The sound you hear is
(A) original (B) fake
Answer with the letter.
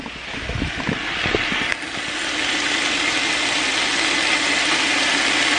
A